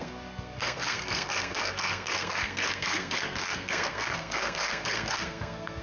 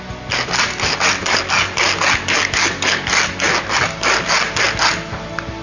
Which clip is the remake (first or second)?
first